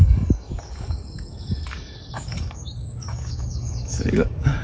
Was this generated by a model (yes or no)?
yes